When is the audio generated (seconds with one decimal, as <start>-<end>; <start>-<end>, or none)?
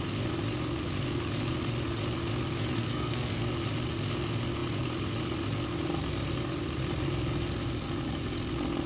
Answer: 2.8-3.5